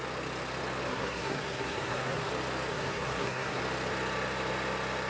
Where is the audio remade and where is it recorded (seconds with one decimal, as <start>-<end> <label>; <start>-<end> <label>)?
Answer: 0.0-0.9 recorded; 0.9-2.3 remade; 2.3-2.7 recorded; 2.7-3.6 remade; 3.6-5.1 recorded